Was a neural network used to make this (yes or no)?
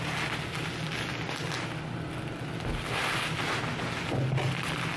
no